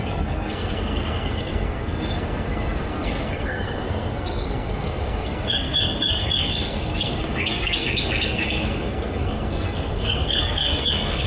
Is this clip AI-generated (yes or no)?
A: yes